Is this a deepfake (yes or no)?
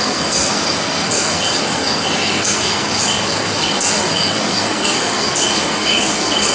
yes